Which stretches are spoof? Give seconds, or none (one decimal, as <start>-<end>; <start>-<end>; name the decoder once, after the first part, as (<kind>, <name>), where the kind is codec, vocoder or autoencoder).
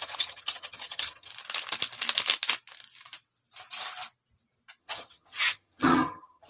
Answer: 0.0-1.3 (vocoder, HiFi-GAN); 4.8-6.5